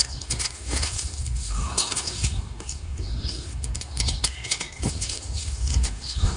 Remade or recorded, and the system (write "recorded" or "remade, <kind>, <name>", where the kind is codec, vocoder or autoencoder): remade, codec, SNAC